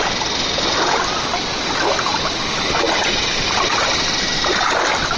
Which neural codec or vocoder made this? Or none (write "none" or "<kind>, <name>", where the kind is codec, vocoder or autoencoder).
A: none